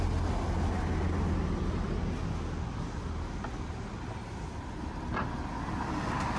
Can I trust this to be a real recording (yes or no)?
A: yes